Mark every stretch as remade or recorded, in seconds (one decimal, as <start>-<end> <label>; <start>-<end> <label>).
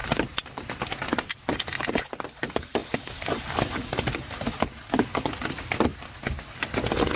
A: 0.0-2.0 remade; 2.0-5.9 recorded; 5.9-6.4 remade; 6.4-7.2 recorded